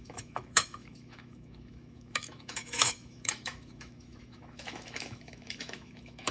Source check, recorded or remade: remade